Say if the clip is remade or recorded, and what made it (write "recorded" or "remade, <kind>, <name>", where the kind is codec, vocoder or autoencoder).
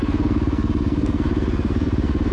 remade, codec, SNAC